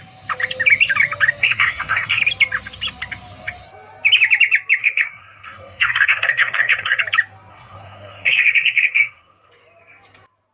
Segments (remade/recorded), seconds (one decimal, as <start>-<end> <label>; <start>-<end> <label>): 0.0-1.4 recorded; 1.4-2.2 remade; 2.2-4.8 recorded; 4.8-7.0 remade; 7.0-7.5 recorded; 7.5-9.5 remade; 9.5-10.5 recorded